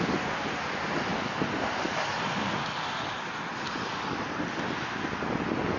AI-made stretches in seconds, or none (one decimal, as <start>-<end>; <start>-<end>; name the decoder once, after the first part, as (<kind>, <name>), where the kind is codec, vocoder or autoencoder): none